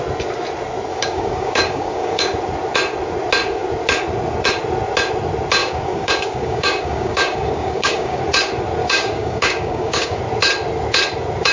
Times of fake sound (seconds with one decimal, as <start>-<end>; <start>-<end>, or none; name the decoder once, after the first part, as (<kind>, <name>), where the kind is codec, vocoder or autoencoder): 0.9-2.2 (codec, DAC); 5.6-8.2; 8.8-10.2